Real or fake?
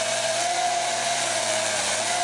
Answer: fake